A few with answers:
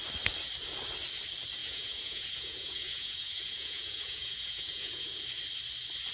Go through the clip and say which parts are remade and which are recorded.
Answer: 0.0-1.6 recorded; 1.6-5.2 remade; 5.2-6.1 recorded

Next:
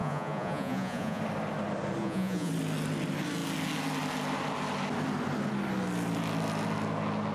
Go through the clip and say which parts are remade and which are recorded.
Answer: 0.0-1.2 remade; 1.2-2.0 recorded; 2.0-2.5 remade; 2.5-7.3 recorded

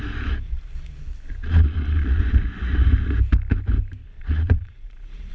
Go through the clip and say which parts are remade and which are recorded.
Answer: 0.0-1.4 recorded; 1.4-2.2 remade; 2.2-4.0 recorded; 4.0-5.3 remade

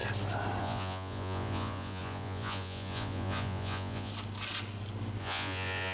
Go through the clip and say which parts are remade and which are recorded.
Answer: 0.0-0.6 recorded; 0.6-4.1 remade; 4.1-5.2 recorded; 5.2-5.9 remade

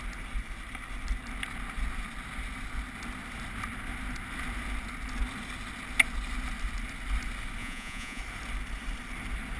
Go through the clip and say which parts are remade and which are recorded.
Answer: 0.0-7.6 recorded; 7.6-8.2 remade; 8.2-9.6 recorded

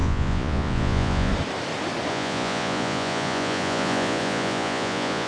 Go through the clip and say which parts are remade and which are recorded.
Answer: 0.0-1.3 remade; 1.3-2.1 recorded; 2.1-5.3 remade

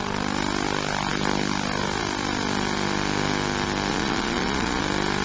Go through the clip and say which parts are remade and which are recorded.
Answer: 0.0-3.9 recorded; 3.9-4.8 remade; 4.8-5.2 recorded